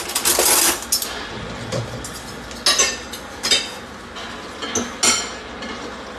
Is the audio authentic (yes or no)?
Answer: yes